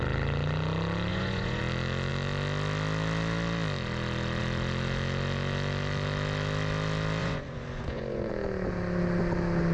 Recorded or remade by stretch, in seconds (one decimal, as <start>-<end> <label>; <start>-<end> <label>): 0.0-1.1 recorded; 1.1-1.6 remade; 1.6-7.2 recorded; 7.2-8.3 remade; 8.3-9.7 recorded